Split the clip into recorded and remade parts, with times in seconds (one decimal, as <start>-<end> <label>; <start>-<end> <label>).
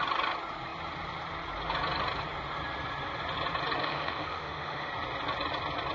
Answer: 0.0-3.8 recorded; 3.8-4.9 remade; 4.9-5.9 recorded